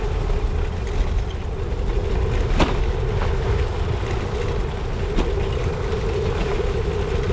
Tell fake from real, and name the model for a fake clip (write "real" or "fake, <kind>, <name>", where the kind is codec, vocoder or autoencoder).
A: real